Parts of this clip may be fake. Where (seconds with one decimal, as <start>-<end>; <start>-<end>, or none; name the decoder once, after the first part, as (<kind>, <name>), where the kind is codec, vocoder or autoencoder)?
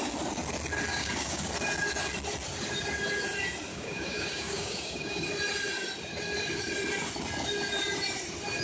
0.9-1.4 (codec, DAC); 3.7-5.3